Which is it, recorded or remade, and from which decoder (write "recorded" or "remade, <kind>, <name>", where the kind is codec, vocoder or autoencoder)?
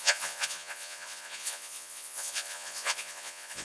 remade, vocoder, Vocos